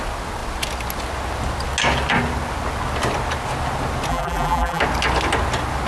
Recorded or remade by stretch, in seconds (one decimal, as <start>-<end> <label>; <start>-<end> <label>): 0.0-4.1 recorded; 4.1-4.8 remade; 4.8-5.9 recorded